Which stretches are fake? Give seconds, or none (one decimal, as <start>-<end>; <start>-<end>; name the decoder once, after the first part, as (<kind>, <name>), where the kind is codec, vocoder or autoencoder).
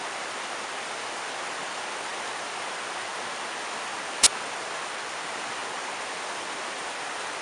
none